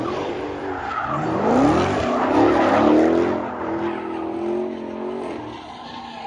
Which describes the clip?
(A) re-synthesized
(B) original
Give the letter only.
B